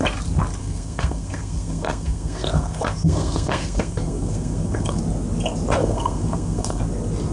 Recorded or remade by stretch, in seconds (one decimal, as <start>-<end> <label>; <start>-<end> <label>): 0.0-0.6 recorded; 0.6-5.0 remade; 5.0-5.8 recorded; 5.8-6.8 remade; 6.8-7.3 recorded